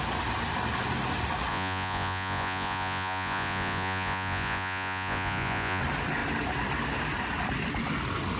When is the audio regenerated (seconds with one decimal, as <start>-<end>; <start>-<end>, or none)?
1.5-5.8